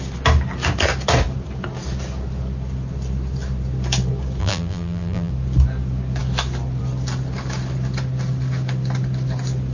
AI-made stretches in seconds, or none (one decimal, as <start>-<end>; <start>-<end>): 4.4-5.3